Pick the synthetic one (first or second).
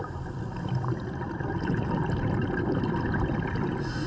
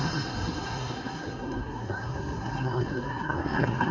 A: second